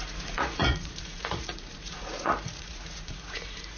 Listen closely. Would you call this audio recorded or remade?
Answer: remade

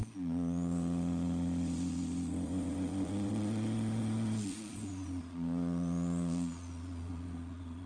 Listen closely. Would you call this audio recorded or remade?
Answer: remade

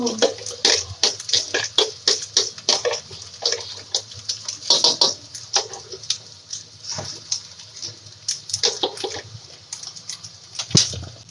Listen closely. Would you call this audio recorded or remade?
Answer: recorded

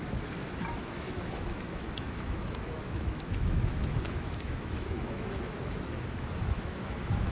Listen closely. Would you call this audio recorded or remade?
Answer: remade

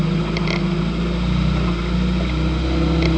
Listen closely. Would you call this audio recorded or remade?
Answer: recorded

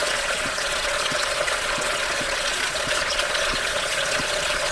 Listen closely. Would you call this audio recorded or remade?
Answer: remade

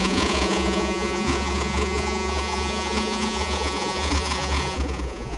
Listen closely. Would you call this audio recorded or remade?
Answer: remade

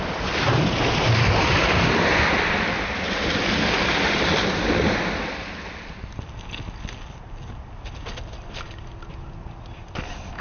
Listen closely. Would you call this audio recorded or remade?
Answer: recorded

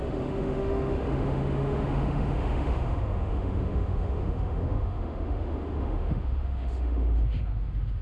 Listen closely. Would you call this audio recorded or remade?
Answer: remade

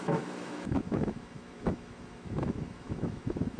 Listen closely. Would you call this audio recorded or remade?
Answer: remade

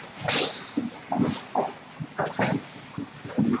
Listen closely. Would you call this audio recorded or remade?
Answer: recorded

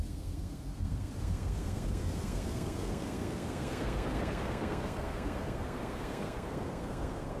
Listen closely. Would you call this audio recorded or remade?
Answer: remade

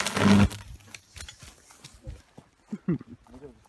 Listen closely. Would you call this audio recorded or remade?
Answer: recorded